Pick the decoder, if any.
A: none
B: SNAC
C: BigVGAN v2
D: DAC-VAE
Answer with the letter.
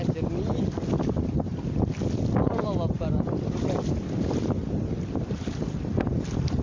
A